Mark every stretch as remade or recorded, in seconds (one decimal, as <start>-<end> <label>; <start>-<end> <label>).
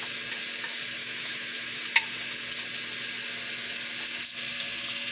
0.0-1.0 recorded; 1.0-1.8 remade; 1.8-5.1 recorded